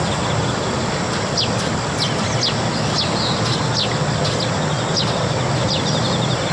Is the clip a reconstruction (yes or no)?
no